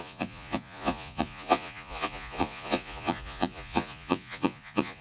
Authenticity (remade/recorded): remade